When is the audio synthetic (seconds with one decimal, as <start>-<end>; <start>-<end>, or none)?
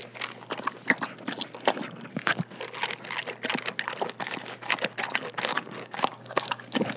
5.5-7.0